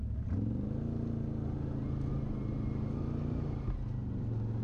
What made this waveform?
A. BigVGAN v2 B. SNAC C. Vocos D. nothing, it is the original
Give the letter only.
D